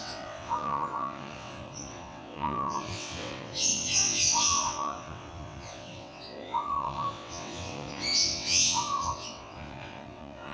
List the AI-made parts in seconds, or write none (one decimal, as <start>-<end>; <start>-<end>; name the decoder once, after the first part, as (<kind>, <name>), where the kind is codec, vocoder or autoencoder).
0.0-10.5 (vocoder, WaveNeXt)